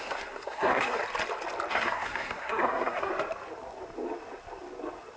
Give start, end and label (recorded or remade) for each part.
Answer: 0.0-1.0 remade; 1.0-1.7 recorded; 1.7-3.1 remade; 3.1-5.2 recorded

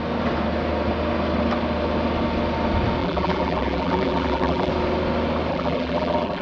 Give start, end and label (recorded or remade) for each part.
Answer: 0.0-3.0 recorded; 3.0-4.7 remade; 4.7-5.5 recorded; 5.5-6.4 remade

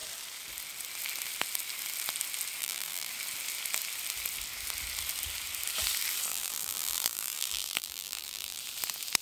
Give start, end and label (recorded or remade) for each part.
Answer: 0.0-2.6 recorded; 2.6-3.1 remade; 3.1-6.3 recorded; 6.3-8.6 remade; 8.6-9.2 recorded

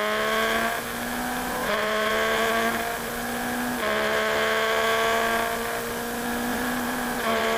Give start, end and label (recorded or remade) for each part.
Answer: 0.0-1.6 recorded; 1.6-2.1 remade; 2.1-6.5 recorded; 6.5-7.6 remade

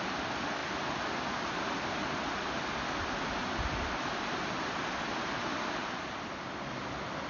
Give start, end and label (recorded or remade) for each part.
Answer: 0.0-7.3 recorded

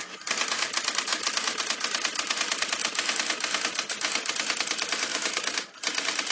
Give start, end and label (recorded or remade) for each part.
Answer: 0.0-5.1 recorded; 5.1-5.7 remade; 5.7-6.3 recorded